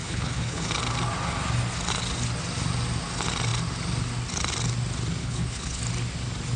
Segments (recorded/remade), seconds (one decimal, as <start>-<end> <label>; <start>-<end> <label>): 0.0-0.7 remade; 0.7-5.2 recorded; 5.2-5.8 remade; 5.8-6.6 recorded